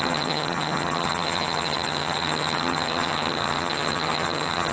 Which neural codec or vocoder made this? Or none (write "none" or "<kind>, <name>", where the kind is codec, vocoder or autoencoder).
vocoder, HiFi-GAN